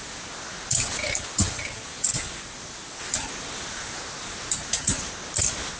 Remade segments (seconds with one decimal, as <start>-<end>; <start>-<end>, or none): none